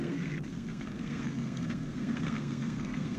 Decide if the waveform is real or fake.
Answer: fake